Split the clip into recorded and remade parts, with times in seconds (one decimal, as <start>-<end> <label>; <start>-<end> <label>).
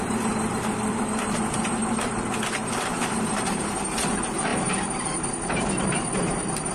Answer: 0.0-1.8 remade; 1.8-2.8 recorded; 2.8-6.7 remade